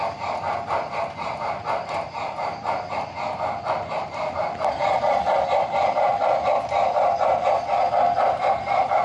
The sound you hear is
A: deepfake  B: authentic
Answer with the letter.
A